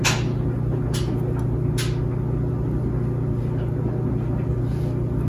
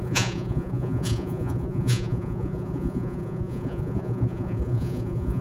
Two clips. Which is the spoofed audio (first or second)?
second